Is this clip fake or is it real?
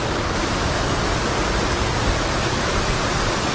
real